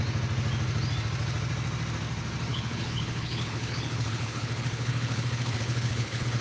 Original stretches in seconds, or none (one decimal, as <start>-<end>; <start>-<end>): 0.0-2.5